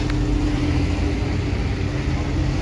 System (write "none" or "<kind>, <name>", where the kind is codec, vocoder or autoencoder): none